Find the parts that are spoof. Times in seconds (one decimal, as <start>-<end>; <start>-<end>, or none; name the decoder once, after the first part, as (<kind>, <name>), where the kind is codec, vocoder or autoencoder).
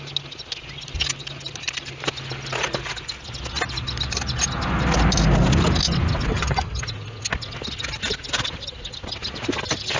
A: 6.3-6.8 (vocoder, HiFi-GAN)